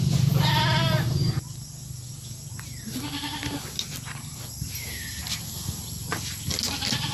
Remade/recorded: recorded